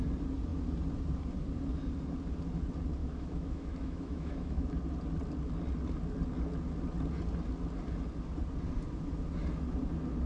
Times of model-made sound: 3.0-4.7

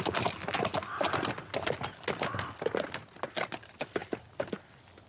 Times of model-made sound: none

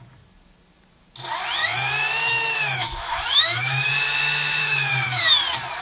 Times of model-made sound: 1.6-3.9; 4.6-5.2

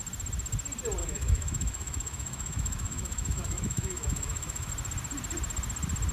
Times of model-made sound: 1.0-4.7

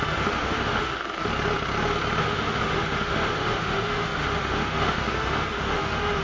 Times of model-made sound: 0.0-1.3; 2.2-6.2